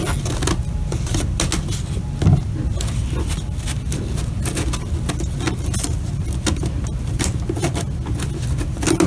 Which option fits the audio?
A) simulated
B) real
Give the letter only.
B